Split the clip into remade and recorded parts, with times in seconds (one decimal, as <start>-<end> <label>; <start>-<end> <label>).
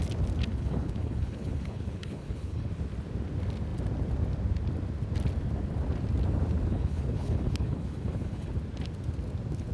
0.0-0.5 recorded; 0.5-2.7 remade; 2.7-6.7 recorded; 6.7-8.5 remade; 8.5-9.7 recorded